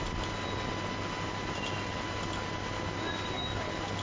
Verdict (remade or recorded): recorded